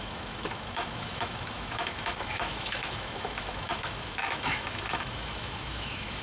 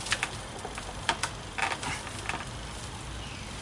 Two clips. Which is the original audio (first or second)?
second